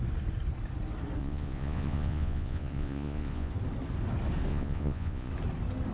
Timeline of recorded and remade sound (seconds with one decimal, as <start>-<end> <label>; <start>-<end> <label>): 0.0-1.2 recorded; 1.2-3.5 remade; 3.5-4.5 recorded; 4.5-5.3 remade; 5.3-5.9 recorded